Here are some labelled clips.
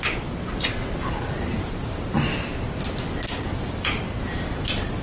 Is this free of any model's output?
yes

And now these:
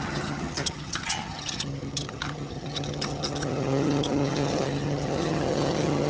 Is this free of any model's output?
no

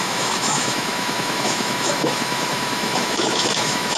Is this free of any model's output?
no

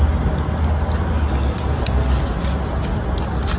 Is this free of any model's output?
yes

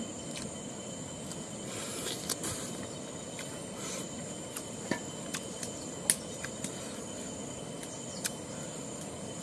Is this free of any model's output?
yes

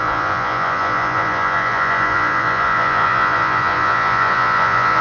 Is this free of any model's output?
no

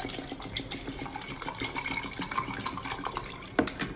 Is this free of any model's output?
yes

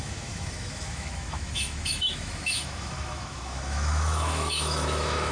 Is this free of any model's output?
no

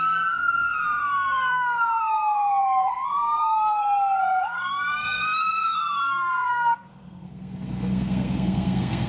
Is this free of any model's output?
no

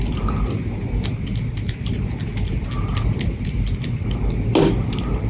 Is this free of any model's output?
yes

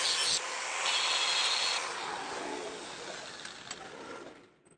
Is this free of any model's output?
yes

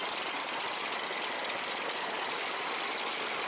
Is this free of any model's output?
yes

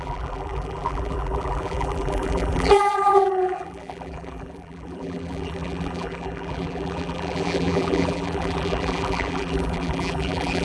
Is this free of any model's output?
no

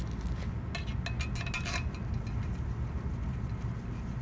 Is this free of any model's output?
yes